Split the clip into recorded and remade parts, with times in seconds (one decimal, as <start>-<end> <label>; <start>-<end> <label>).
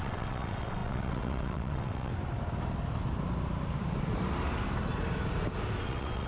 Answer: 0.0-2.1 remade; 2.1-5.8 recorded; 5.8-6.3 remade